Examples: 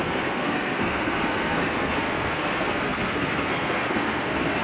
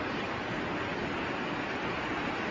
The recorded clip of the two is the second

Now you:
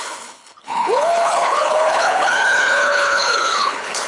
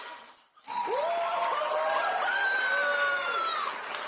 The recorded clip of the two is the second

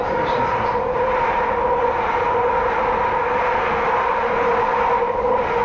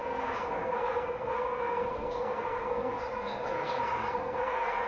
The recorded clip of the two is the first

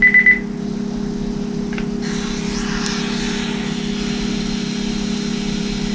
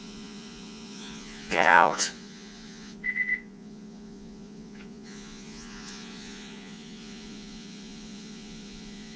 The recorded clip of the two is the first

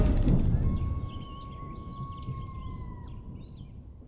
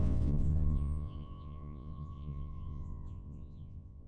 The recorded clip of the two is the first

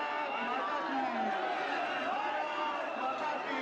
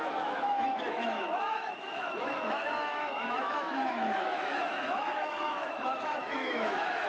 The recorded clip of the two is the first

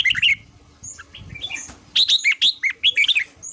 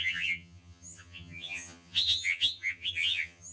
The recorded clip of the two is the first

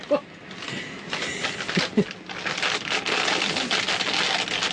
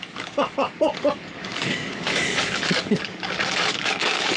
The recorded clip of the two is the first